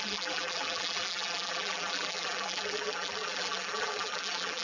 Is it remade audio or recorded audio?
remade